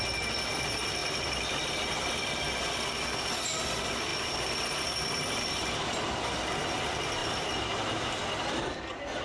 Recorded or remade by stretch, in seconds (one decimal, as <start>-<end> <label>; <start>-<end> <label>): 0.0-9.2 recorded